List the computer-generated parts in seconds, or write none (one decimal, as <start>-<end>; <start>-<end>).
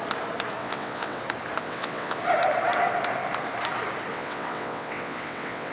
0.6-1.2; 1.6-2.2; 4.1-5.7